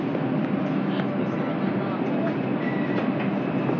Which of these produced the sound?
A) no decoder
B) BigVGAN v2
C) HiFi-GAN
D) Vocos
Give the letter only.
A